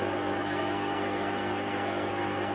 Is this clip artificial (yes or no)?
yes